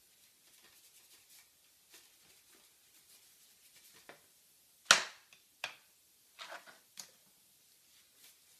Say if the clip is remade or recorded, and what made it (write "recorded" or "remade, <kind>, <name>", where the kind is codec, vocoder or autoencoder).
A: recorded